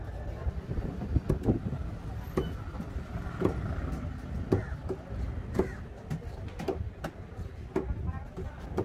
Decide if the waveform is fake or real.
real